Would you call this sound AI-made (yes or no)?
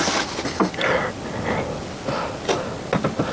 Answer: no